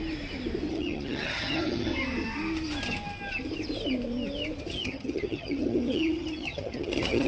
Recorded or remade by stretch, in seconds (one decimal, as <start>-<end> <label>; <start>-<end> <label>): 0.0-0.7 recorded; 0.7-1.9 remade; 1.9-4.7 recorded; 4.7-7.3 remade